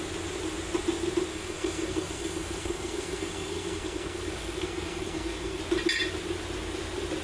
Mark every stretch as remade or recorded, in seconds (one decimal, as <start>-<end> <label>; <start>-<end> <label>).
0.0-1.3 recorded; 1.3-5.6 remade; 5.6-7.2 recorded